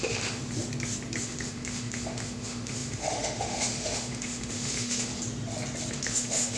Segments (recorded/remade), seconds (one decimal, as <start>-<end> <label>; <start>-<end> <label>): 0.0-0.4 remade; 0.4-1.2 recorded; 1.2-5.1 remade; 5.1-5.9 recorded; 5.9-6.6 remade